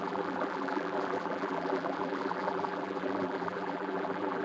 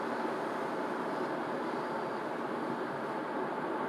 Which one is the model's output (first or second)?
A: first